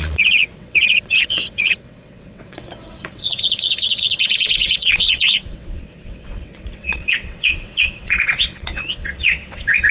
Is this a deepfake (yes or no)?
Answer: yes